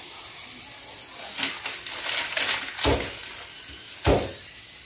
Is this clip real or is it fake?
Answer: real